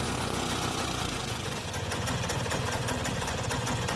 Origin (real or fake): fake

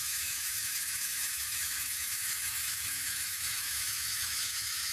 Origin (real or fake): fake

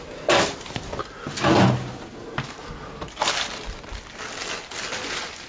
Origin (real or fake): real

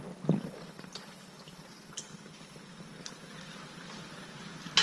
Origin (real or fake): real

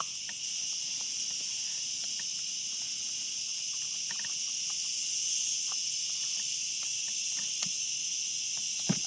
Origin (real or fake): real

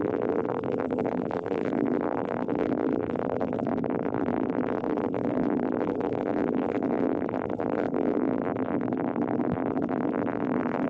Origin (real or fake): fake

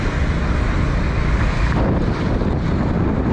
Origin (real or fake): real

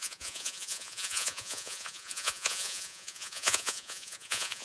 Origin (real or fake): fake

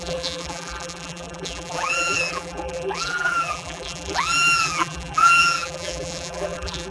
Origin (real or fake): fake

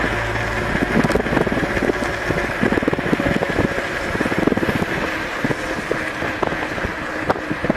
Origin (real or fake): real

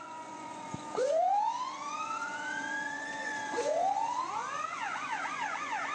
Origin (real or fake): fake